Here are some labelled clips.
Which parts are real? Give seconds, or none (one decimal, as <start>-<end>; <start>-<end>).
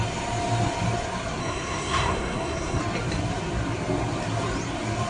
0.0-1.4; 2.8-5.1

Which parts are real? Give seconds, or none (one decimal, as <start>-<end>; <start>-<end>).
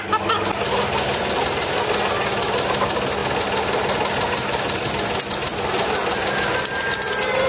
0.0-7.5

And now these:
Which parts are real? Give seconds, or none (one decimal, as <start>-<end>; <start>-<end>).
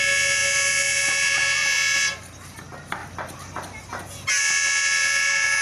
0.0-5.6